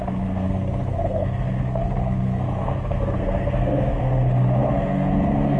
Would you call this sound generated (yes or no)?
yes